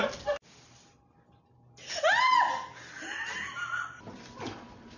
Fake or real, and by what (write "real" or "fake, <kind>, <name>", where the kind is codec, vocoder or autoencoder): real